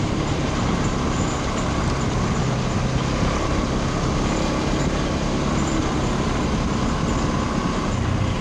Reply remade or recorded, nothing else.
recorded